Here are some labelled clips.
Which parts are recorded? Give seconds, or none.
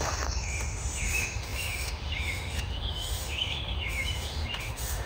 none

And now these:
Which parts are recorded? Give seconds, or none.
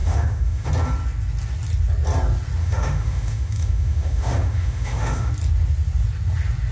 0.7-2.6; 5.3-6.7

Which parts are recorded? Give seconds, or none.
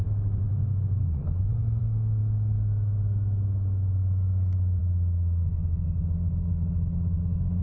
0.6-1.8; 2.2-4.8